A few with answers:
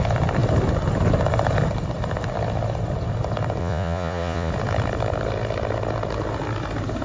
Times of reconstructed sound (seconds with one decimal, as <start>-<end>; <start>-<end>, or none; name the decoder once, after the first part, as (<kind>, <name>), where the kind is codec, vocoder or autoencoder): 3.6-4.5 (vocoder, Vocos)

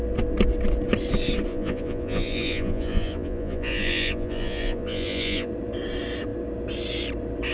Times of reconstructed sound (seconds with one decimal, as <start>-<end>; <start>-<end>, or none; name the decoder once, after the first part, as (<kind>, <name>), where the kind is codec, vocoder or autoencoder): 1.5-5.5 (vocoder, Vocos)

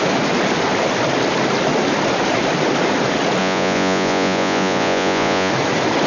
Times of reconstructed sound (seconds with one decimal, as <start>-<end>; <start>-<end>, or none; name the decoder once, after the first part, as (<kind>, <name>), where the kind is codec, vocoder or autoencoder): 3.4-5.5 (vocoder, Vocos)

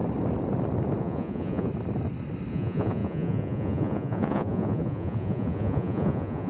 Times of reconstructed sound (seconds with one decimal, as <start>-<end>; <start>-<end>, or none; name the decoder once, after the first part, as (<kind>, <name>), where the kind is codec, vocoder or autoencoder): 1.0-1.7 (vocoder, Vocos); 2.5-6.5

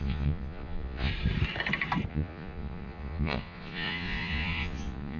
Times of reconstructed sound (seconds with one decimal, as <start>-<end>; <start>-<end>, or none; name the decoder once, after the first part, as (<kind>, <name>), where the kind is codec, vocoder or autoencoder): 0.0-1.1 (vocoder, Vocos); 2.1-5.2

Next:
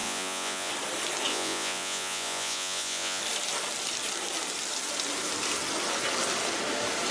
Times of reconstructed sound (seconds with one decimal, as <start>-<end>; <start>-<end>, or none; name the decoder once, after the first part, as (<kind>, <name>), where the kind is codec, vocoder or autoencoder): 0.0-0.7 (vocoder, Vocos); 1.3-3.2